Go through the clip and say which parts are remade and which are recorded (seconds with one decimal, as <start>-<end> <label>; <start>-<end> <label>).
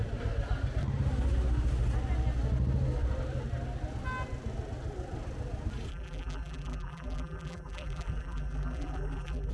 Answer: 0.0-5.9 recorded; 5.9-9.5 remade